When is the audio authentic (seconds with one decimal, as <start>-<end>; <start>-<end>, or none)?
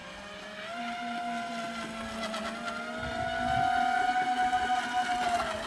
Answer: 0.0-5.7